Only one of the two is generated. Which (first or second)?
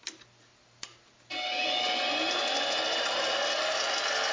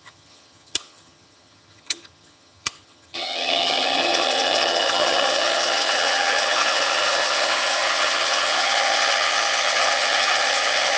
second